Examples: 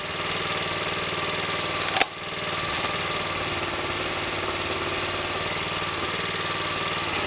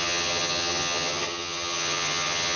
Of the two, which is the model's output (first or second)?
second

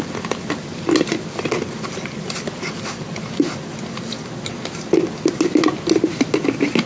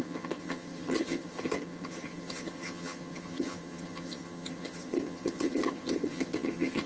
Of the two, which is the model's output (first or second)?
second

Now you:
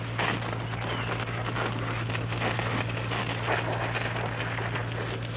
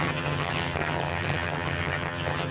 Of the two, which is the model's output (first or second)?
second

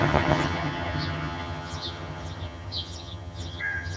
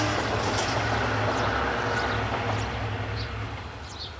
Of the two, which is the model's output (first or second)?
first